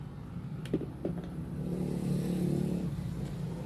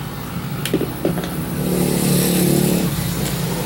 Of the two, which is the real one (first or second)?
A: second